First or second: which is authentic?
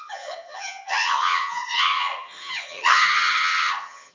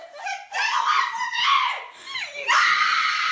second